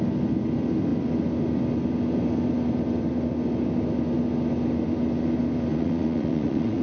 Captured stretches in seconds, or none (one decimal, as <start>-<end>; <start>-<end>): 0.0-5.7